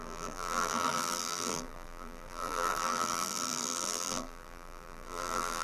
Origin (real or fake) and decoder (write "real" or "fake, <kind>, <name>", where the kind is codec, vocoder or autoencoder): fake, vocoder, BigVGAN v2